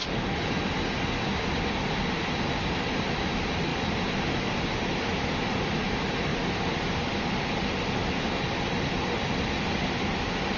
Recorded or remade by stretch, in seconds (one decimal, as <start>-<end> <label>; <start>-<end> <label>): 0.0-3.7 recorded; 3.7-4.6 remade; 4.6-6.3 recorded; 6.3-7.2 remade; 7.2-10.6 recorded